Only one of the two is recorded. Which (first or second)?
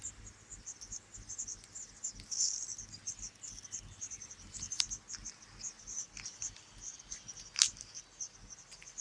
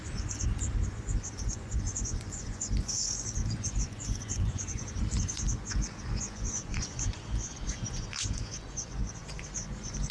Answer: first